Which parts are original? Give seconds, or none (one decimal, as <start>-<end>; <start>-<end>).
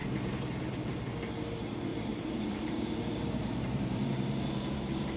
1.1-1.9